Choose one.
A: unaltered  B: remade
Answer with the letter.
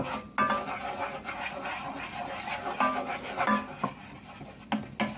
A